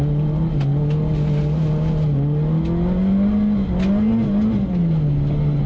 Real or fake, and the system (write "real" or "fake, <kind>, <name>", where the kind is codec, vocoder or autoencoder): real